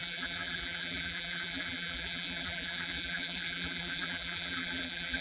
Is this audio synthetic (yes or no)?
yes